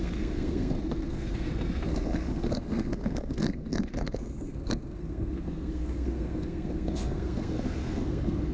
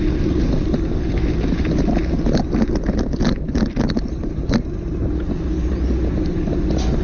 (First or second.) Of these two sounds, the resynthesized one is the first